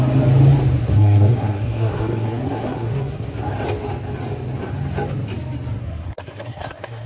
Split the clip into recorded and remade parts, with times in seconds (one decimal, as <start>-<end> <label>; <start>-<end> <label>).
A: 0.0-0.8 recorded; 0.8-3.3 remade; 3.3-5.8 recorded; 5.8-7.1 remade